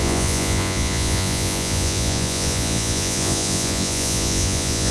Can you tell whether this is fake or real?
fake